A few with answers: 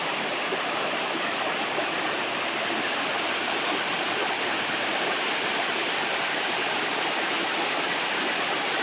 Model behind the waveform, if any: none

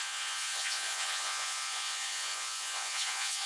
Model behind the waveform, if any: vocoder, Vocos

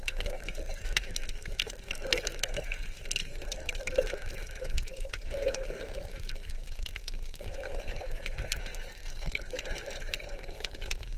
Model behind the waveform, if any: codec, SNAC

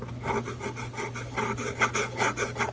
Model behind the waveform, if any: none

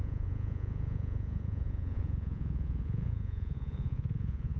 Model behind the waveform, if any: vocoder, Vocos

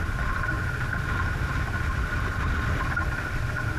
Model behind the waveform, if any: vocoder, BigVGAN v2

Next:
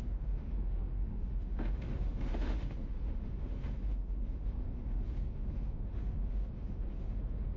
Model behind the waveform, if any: autoencoder, DAC-VAE